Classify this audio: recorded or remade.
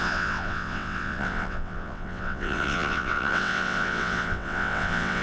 remade